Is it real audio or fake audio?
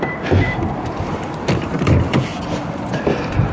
fake